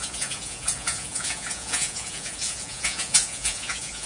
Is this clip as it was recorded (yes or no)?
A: no